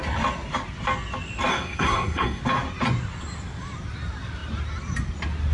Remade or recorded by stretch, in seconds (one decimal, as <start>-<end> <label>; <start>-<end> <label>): 0.0-1.5 recorded; 1.5-2.4 remade; 2.4-5.5 recorded